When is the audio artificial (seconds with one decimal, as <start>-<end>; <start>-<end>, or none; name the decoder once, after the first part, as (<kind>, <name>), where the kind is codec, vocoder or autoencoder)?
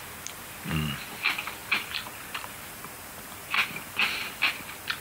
1.6-2.5 (vocoder, BigVGAN v2); 3.4-4.5